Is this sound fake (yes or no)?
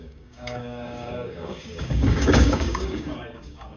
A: yes